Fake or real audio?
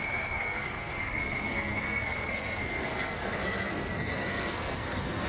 fake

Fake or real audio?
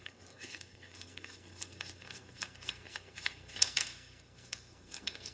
fake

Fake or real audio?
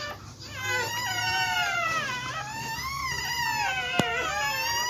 real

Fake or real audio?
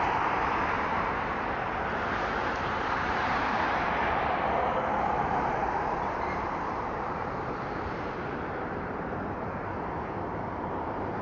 fake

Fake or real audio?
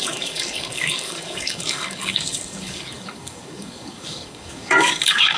fake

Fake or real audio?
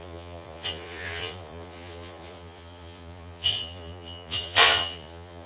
fake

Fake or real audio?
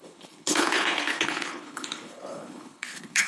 fake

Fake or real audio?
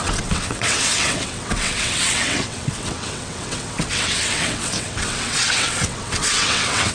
fake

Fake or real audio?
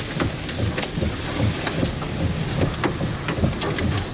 real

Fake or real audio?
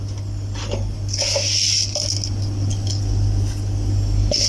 real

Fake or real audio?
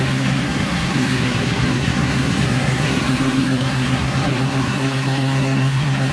fake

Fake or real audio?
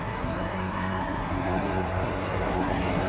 fake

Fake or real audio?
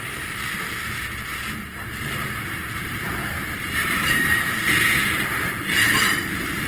fake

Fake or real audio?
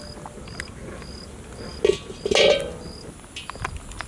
real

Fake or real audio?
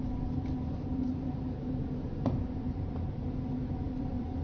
fake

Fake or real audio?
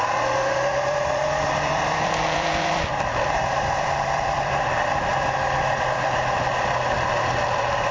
fake